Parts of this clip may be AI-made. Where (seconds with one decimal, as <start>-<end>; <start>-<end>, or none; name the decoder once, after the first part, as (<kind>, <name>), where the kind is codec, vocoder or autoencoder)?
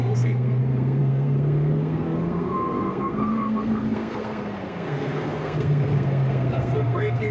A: 0.0-7.3 (codec, SNAC)